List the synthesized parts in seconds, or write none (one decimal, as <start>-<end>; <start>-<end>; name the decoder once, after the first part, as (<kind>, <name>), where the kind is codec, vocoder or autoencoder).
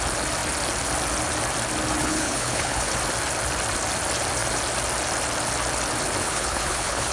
2.0-2.9 (codec, HILCodec); 6.2-7.1